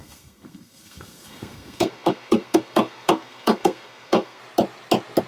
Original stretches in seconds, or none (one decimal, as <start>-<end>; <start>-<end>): 4.4-5.3